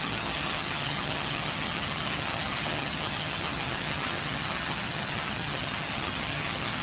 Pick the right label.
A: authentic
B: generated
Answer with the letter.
B